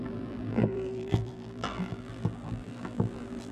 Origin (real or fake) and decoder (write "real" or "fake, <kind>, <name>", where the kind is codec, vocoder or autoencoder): fake, vocoder, BigVGAN v2